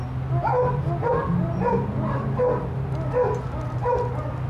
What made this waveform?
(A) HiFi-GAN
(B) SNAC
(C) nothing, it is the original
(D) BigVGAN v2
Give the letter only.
C